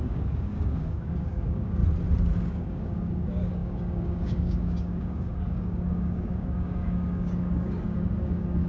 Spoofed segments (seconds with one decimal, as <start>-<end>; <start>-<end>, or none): 0.0-1.8; 2.4-8.7